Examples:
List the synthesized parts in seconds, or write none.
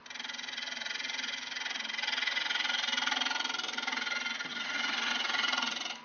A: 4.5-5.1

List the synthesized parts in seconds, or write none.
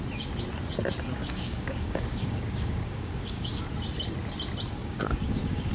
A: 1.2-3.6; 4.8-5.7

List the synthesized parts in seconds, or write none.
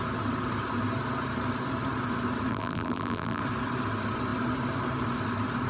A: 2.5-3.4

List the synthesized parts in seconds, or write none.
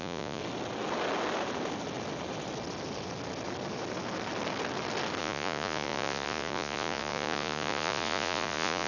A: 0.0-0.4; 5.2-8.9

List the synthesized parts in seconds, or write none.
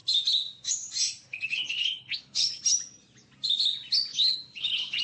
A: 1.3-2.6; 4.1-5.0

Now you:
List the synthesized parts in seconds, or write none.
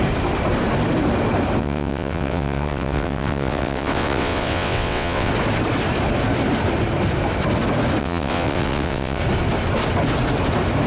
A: 1.6-5.3; 8.0-9.2